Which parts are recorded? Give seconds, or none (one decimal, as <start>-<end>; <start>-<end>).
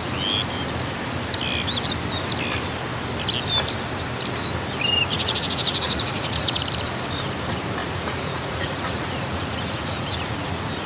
0.0-5.1; 6.6-7.8